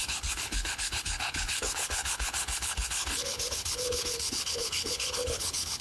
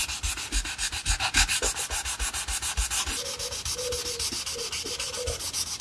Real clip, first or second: second